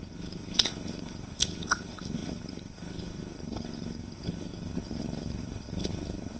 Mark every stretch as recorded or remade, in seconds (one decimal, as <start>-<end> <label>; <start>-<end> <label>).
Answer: 0.0-6.4 remade